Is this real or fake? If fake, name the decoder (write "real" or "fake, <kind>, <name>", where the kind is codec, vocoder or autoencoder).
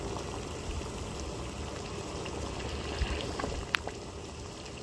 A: fake, vocoder, BigVGAN v2